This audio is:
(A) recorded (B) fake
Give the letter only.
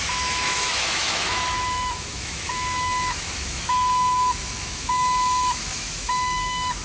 B